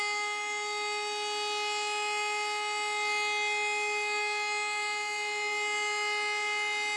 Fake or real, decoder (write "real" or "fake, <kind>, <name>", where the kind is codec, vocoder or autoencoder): real